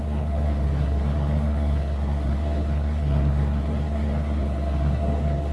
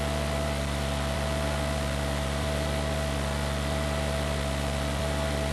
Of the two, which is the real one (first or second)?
second